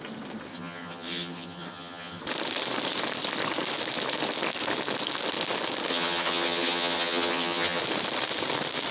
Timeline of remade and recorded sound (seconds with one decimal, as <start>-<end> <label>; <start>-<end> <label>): 0.0-0.5 recorded; 0.5-2.2 remade; 2.2-5.9 recorded; 5.9-7.8 remade; 7.8-8.9 recorded